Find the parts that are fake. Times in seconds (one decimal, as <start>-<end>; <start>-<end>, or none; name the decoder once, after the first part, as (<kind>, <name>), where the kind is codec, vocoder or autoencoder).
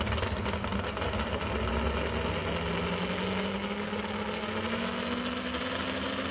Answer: none